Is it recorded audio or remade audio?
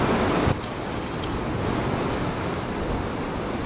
recorded